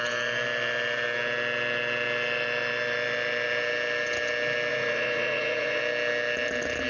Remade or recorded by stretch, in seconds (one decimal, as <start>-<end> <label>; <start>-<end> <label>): 0.0-4.7 recorded; 4.7-5.8 remade; 5.8-6.9 recorded